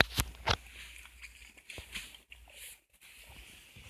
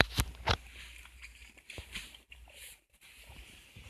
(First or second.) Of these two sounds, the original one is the first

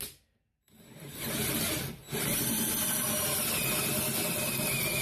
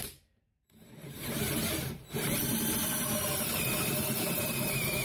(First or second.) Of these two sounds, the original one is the first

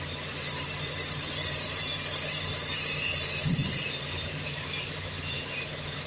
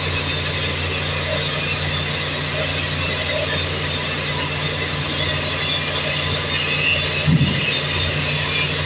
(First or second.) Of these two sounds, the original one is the second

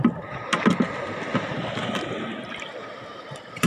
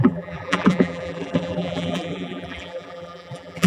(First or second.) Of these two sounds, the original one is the first